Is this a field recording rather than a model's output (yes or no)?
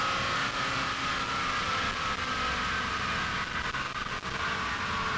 yes